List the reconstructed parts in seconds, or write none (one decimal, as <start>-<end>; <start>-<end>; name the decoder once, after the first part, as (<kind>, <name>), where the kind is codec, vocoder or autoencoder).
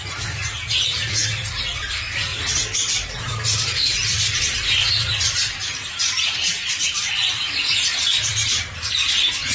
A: 2.3-4.4 (vocoder, BigVGAN v2); 5.0-8.0